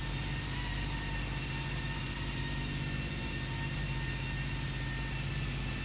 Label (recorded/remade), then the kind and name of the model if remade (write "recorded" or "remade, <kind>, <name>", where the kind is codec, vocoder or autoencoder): recorded